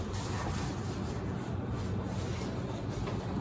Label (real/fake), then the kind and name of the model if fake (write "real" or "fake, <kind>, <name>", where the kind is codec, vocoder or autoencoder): real